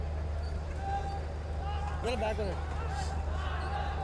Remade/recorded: recorded